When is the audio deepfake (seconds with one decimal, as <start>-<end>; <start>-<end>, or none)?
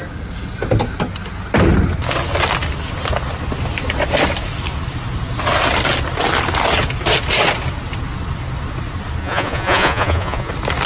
9.2-10.5